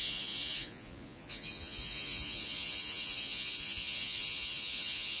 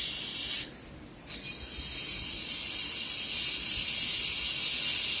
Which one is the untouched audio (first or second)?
second